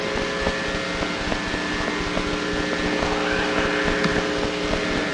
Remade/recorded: recorded